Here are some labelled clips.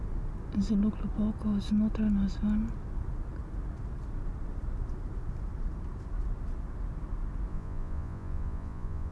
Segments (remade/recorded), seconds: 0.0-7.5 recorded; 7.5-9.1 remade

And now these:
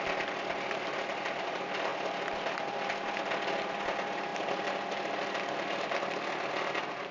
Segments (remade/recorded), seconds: 0.0-7.1 recorded

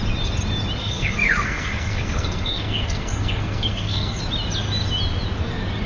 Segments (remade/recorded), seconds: 0.0-0.8 recorded; 0.8-4.2 remade; 4.2-5.9 recorded

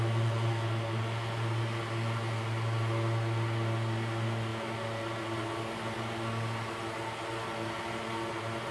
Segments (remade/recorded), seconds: 0.0-8.7 recorded

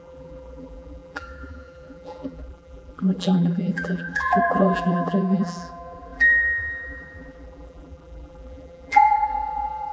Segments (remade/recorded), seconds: 0.0-9.9 remade

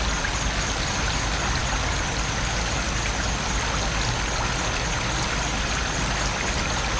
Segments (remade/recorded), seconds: 0.0-7.0 recorded

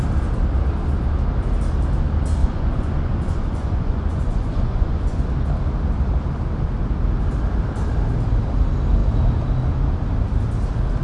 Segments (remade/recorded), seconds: 0.0-2.4 recorded; 2.4-5.2 remade; 5.2-11.0 recorded

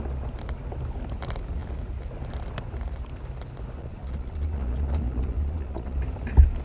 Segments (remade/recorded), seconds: 0.0-3.8 recorded; 3.8-6.0 remade; 6.0-6.6 recorded